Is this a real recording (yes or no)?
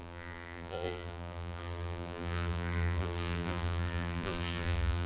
no